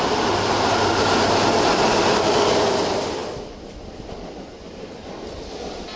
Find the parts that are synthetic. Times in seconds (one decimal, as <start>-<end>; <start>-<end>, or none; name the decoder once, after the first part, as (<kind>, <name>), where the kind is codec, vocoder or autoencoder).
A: none